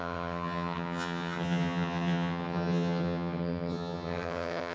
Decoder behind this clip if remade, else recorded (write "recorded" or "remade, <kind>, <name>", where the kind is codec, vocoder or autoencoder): remade, vocoder, HiFi-GAN